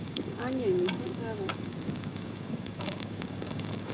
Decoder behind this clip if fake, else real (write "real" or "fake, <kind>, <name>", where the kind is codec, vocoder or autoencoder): fake, codec, DAC